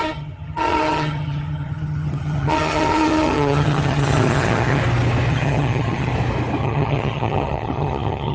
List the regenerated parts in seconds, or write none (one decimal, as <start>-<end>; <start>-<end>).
0.0-4.8; 5.3-6.1; 6.6-8.3

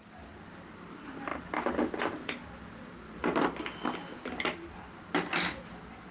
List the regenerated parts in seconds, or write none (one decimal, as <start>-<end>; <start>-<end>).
none

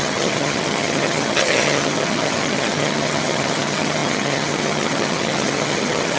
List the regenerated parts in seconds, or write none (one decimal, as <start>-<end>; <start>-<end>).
0.0-6.2

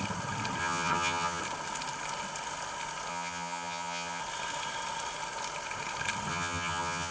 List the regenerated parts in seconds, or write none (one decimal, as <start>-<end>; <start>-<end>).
0.6-1.4; 3.1-4.2; 6.3-7.1

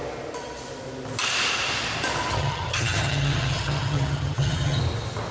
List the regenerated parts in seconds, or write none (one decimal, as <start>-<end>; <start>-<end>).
2.3-4.8

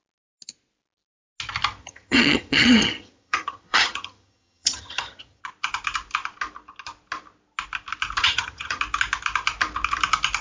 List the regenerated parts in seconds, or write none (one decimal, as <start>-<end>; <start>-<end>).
1.8-5.4; 8.2-8.8

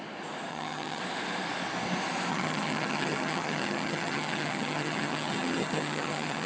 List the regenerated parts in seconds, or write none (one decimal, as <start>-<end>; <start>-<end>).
0.5-1.0; 2.3-6.5

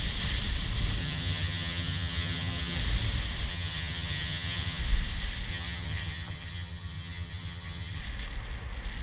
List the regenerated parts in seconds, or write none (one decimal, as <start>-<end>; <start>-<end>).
1.0-2.8; 3.5-4.8; 5.5-8.0